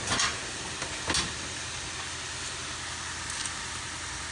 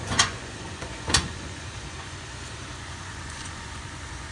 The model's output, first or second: second